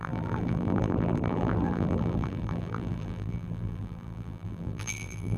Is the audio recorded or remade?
remade